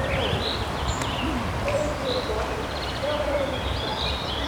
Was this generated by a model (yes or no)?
yes